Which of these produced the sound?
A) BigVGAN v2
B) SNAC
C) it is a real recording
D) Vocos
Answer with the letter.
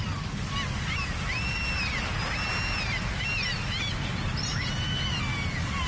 C